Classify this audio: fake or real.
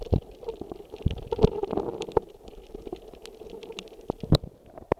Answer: real